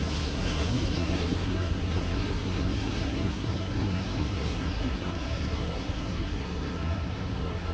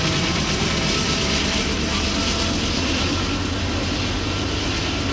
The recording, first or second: second